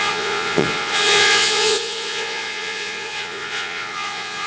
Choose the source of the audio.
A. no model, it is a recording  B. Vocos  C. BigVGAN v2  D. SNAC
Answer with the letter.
B